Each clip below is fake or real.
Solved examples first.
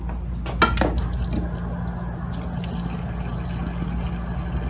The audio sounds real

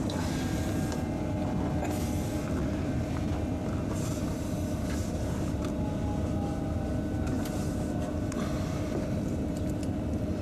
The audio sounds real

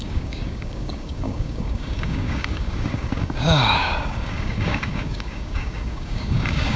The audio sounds fake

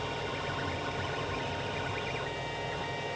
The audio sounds real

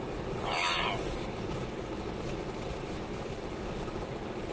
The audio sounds real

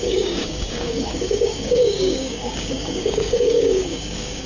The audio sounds fake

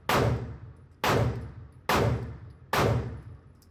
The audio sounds real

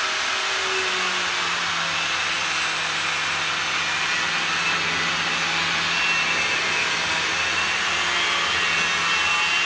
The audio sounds real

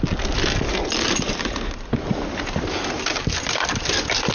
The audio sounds real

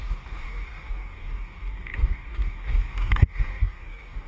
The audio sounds fake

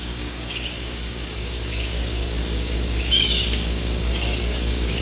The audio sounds fake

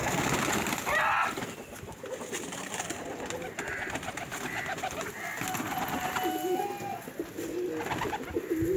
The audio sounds real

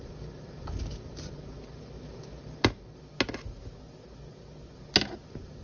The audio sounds real